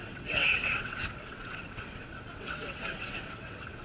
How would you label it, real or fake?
fake